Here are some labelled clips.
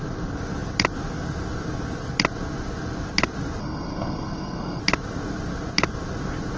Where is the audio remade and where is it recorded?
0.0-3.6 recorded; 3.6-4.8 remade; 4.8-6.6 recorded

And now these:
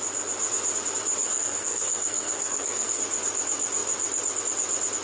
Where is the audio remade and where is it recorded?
0.0-1.2 recorded; 1.2-3.0 remade; 3.0-5.0 recorded

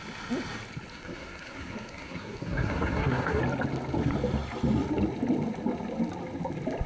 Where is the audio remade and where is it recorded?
0.0-0.9 recorded; 0.9-3.4 remade; 3.4-6.9 recorded